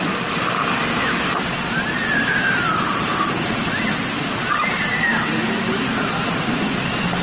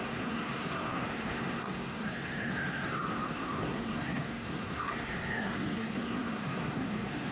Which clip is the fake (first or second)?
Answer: second